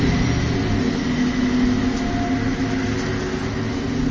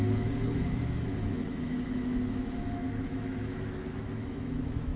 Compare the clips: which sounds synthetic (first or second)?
second